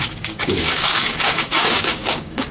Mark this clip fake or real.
fake